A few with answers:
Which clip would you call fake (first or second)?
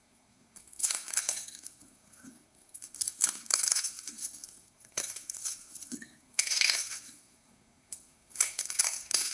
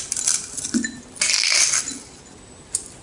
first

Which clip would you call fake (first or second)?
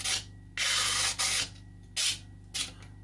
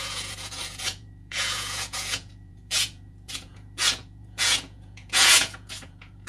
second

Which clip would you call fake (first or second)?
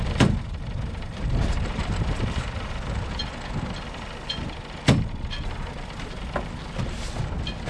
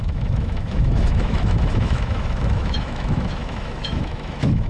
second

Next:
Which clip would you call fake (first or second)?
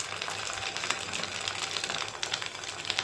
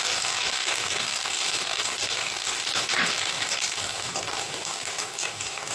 second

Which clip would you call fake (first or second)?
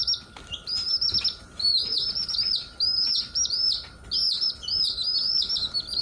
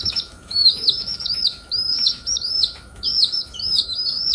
second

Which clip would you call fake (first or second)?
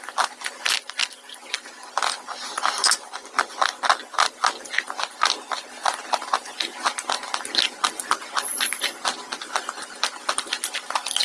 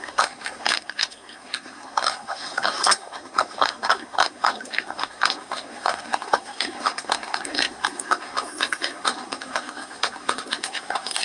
second